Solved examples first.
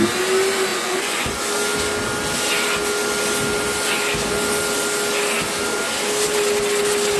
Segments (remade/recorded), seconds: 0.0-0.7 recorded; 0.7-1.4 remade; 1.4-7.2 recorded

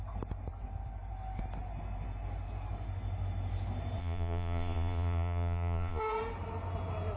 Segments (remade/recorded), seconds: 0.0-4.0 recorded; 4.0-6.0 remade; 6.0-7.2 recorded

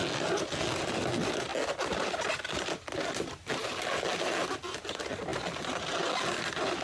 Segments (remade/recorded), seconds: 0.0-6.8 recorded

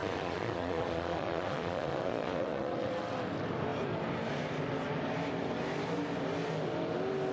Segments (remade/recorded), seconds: 0.0-2.9 remade; 2.9-7.3 recorded

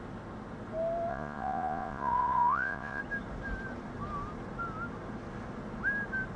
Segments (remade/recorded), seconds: 0.0-1.1 recorded; 1.1-3.0 remade; 3.0-6.4 recorded